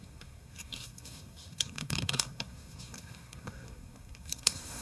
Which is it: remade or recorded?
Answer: remade